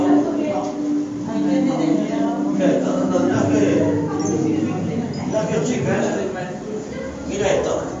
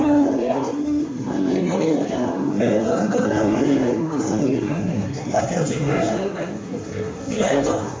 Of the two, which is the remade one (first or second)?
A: second